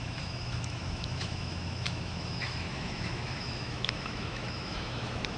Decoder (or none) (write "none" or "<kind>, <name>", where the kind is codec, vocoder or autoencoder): autoencoder, DAC-VAE